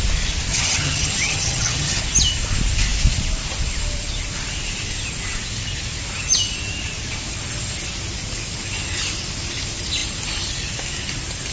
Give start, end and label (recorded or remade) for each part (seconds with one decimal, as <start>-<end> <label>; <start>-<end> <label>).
0.0-0.5 recorded; 0.5-2.0 remade; 2.0-11.5 recorded